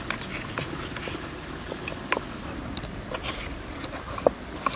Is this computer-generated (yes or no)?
no